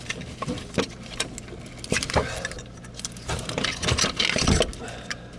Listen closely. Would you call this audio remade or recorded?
recorded